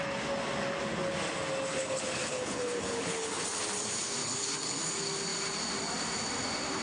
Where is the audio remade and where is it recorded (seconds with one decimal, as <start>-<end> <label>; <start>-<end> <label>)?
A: 0.0-1.7 recorded; 1.7-3.4 remade; 3.4-4.2 recorded; 4.2-4.8 remade; 4.8-6.8 recorded